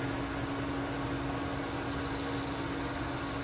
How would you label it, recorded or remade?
recorded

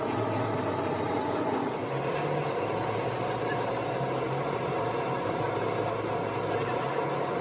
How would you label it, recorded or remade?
recorded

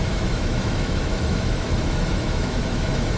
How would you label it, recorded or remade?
remade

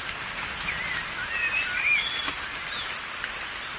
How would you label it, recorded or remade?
recorded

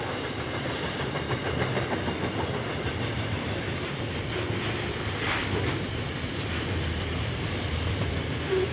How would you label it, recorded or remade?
recorded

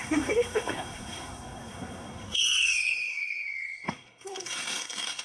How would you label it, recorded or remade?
remade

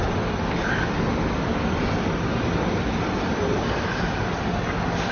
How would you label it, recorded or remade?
recorded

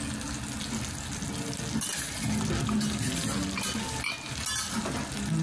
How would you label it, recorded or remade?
recorded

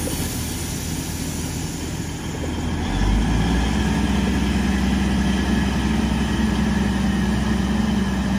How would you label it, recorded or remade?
recorded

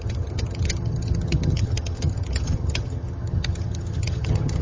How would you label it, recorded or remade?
remade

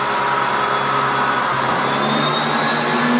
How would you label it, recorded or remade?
recorded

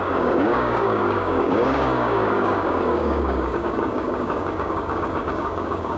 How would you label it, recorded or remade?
remade